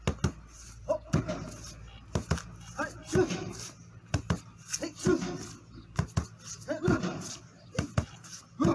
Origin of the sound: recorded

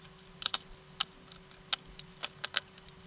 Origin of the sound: recorded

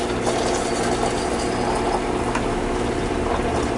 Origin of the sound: recorded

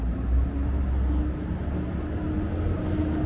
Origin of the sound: recorded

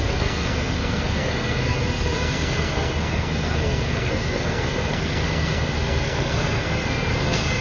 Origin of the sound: remade